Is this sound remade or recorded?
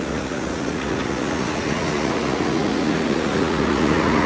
remade